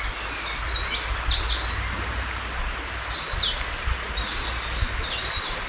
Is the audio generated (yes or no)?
no